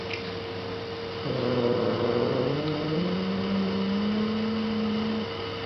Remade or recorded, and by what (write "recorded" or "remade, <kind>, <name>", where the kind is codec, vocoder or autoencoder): recorded